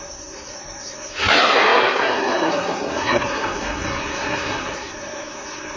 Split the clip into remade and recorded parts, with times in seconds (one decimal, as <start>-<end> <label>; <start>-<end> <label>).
0.0-5.8 remade